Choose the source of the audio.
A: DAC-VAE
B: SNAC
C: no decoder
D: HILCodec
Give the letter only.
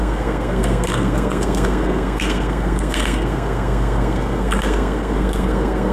B